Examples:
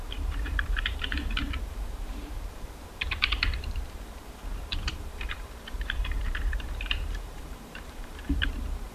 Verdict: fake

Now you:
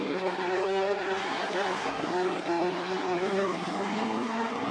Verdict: fake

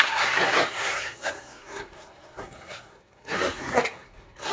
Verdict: fake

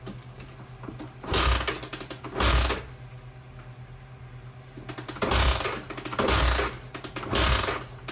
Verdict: real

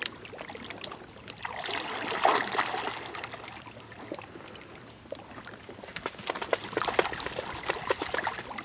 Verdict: real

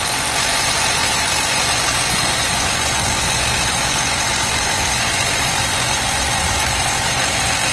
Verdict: fake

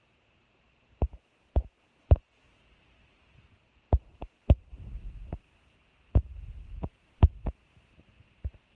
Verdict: fake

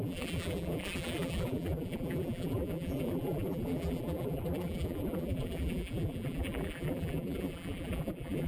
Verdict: fake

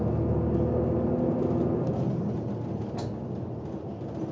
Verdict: real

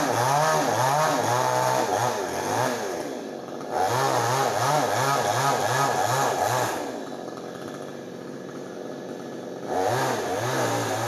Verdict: real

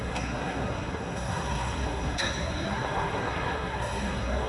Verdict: fake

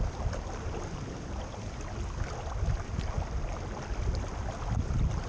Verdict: real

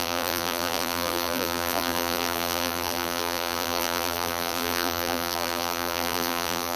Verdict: fake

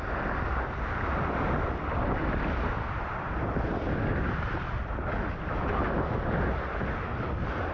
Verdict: real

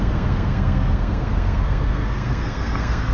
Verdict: fake